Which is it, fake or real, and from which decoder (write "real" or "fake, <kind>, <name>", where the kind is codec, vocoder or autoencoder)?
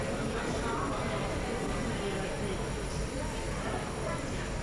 fake, vocoder, BigVGAN v2